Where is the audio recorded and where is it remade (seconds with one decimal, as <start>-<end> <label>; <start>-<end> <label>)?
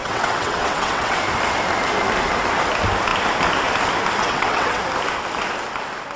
0.0-1.2 remade; 1.2-4.2 recorded; 4.2-4.8 remade; 4.8-6.2 recorded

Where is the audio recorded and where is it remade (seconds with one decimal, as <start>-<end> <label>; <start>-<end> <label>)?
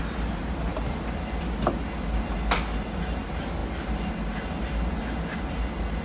0.0-6.0 recorded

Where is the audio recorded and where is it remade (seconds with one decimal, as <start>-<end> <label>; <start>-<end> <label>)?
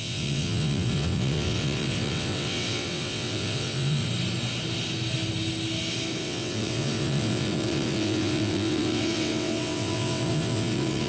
0.0-4.0 remade; 4.0-6.2 recorded; 6.2-11.1 remade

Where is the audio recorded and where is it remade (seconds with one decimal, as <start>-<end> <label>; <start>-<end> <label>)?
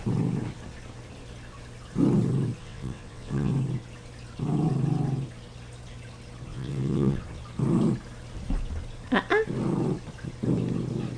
0.0-2.6 recorded; 2.6-3.5 remade; 3.5-6.5 recorded; 6.5-7.2 remade; 7.2-11.2 recorded